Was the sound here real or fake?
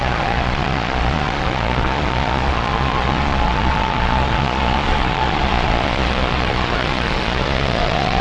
fake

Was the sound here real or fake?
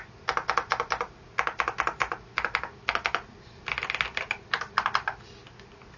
real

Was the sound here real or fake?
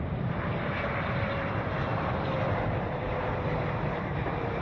fake